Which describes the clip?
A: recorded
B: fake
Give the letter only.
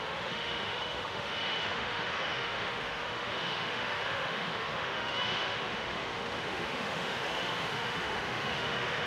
B